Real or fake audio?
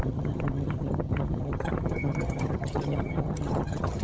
fake